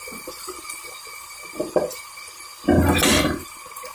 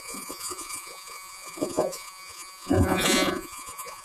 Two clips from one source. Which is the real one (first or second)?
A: first